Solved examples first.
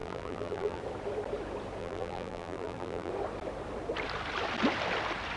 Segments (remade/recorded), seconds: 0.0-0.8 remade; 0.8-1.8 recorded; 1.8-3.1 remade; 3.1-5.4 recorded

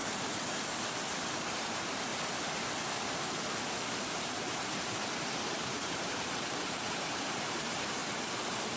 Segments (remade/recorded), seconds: 0.0-1.3 recorded; 1.3-2.1 remade; 2.1-4.2 recorded; 4.2-8.0 remade; 8.0-8.8 recorded

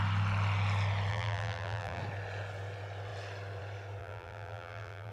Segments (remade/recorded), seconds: 0.0-1.1 recorded; 1.1-2.0 remade; 2.0-4.0 recorded; 4.0-5.1 remade

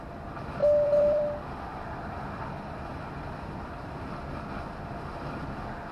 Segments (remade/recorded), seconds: 0.0-0.6 recorded; 0.6-4.1 remade; 4.1-5.9 recorded

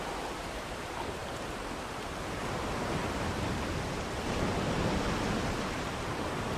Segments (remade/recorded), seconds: 0.0-3.0 remade; 3.0-3.5 recorded; 3.5-4.5 remade; 4.5-5.4 recorded; 5.4-6.6 remade

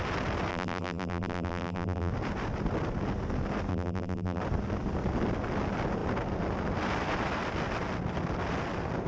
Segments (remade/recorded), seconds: 0.0-0.5 recorded; 0.5-2.1 remade; 2.1-3.7 recorded; 3.7-4.4 remade; 4.4-9.1 recorded

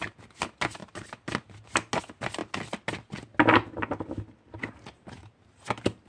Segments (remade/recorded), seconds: 0.0-6.1 recorded